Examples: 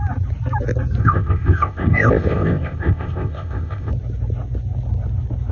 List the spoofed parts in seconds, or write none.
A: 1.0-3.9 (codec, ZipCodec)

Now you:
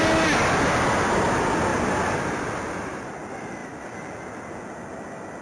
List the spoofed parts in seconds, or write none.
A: none